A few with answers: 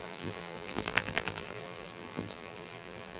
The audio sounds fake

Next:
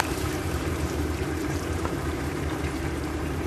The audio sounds fake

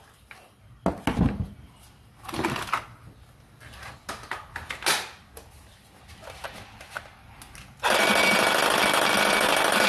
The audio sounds real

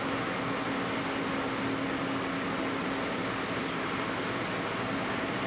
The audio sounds real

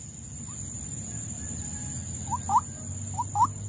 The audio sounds real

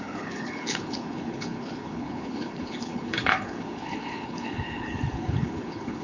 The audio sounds fake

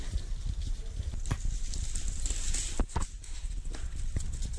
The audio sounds real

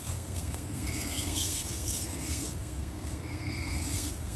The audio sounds fake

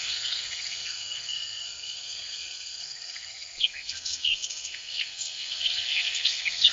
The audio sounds fake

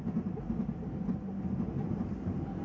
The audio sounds real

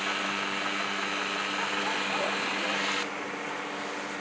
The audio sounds real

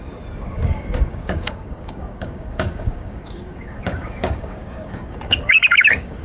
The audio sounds fake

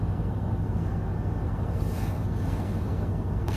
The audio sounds fake